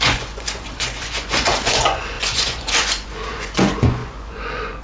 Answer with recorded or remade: remade